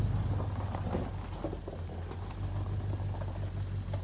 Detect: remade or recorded recorded